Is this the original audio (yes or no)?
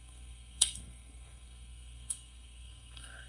no